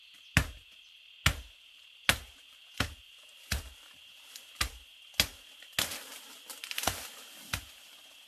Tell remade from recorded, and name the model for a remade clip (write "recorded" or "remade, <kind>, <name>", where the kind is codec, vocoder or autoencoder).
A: recorded